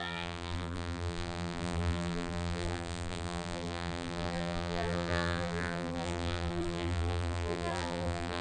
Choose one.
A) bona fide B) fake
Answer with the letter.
B